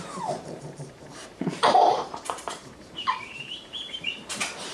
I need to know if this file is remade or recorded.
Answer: remade